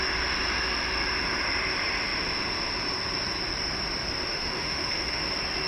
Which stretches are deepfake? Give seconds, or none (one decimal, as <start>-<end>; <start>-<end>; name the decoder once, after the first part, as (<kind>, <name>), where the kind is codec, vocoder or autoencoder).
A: 4.3-5.2 (autoencoder, DAC-VAE)